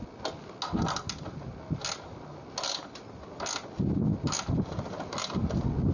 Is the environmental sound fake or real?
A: real